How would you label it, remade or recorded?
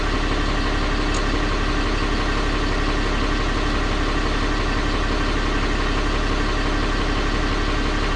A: recorded